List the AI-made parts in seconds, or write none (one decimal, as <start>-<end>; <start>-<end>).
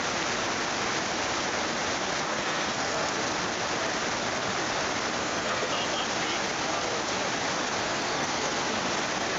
2.3-3.1; 5.2-5.7; 7.8-8.6